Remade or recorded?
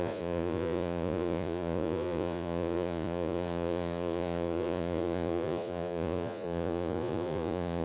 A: remade